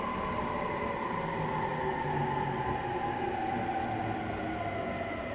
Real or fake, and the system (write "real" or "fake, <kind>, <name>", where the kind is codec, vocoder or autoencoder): real